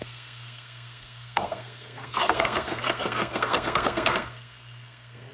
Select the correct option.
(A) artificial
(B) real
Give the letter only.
A